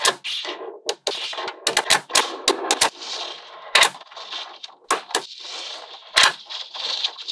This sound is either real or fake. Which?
real